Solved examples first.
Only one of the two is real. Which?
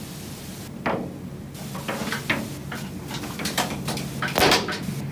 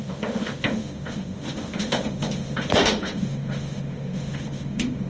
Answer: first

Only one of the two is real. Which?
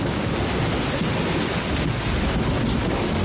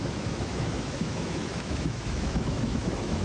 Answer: first